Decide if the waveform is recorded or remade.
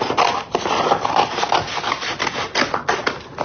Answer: recorded